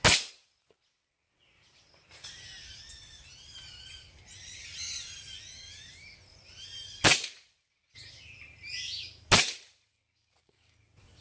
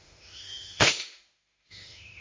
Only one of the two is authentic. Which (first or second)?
first